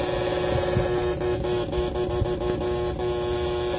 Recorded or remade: recorded